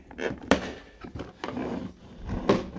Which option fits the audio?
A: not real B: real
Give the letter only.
B